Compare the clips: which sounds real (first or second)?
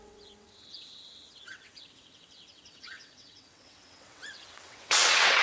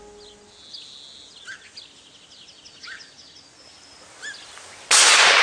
second